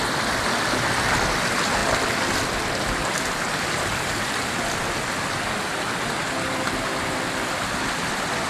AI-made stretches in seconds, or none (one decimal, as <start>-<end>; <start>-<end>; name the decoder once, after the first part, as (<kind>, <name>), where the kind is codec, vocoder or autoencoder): none